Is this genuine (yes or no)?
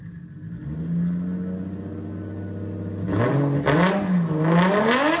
yes